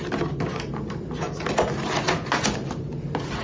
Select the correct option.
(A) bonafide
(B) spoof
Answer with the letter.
A